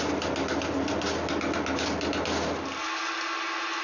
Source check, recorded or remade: recorded